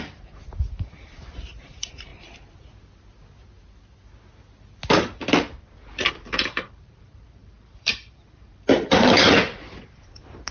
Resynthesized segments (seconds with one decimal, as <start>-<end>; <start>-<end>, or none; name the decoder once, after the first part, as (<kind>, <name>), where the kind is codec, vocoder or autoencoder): 0.0-2.1 (vocoder, BigVGAN v2); 6.1-10.5